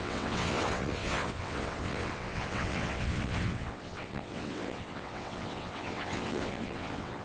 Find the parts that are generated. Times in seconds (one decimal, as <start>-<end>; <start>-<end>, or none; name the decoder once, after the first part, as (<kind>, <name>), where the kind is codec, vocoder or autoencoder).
0.0-7.2 (vocoder, WaveNeXt)